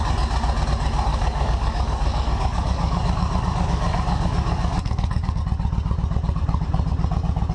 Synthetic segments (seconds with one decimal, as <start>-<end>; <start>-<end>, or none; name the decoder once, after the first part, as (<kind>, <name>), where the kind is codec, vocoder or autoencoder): 1.1-5.4 (codec, DAC)